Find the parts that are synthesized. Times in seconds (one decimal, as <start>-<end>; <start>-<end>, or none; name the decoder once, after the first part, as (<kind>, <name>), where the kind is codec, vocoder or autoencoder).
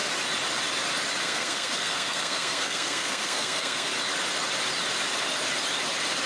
1.2-3.9 (codec, SNAC)